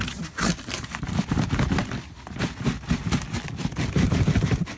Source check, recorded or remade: remade